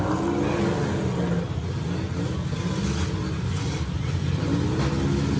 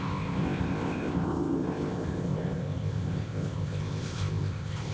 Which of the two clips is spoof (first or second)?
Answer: second